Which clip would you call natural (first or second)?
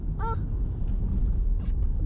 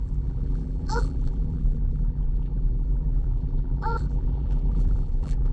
first